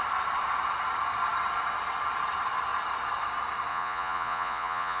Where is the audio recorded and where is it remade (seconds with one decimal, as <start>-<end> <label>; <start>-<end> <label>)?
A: 0.0-3.7 recorded; 3.7-5.0 remade